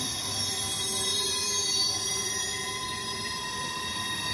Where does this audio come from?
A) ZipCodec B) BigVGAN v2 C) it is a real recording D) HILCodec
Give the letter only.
B